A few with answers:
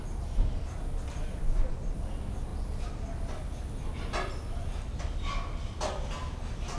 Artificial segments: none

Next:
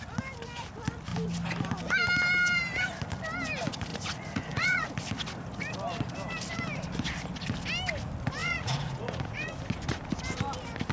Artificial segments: 3.9-4.9; 8.4-9.5

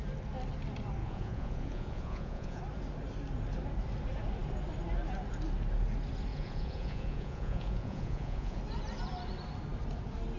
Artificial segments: 1.0-2.6; 6.3-8.6

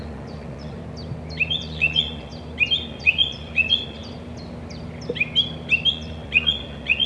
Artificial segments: 0.0-0.8; 1.5-2.3; 2.9-4.0; 5.9-7.1